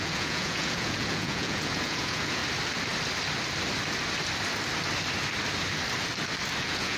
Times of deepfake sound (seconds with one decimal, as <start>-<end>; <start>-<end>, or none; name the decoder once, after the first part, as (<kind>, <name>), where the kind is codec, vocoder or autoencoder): 0.0-2.4 (vocoder, Vocos); 6.6-7.0